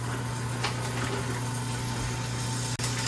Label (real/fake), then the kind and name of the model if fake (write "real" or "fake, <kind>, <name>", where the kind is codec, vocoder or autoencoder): real